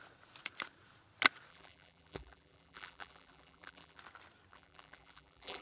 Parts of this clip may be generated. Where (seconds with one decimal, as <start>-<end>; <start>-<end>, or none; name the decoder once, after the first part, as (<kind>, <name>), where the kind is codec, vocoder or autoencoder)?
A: 1.5-4.0 (vocoder, BigVGAN v2); 4.5-5.6